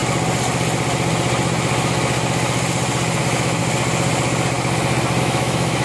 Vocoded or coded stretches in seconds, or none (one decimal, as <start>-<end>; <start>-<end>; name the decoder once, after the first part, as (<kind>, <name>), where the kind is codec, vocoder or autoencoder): 3.2-3.6 (autoencoder, DAC-VAE); 5.2-5.8